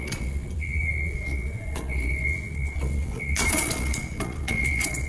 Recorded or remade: remade